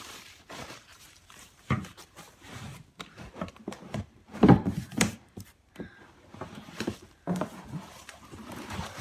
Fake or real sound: fake